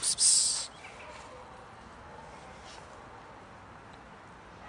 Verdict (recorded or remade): recorded